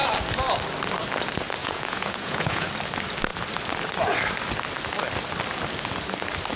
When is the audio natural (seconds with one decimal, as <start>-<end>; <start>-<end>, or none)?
0.0-1.6; 2.7-6.6